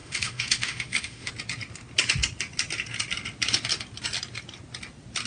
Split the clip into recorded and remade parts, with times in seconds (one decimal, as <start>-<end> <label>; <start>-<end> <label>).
0.0-1.3 remade; 1.3-5.3 recorded